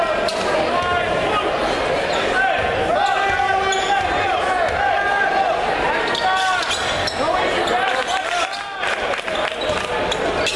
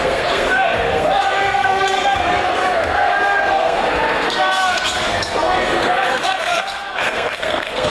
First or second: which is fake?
second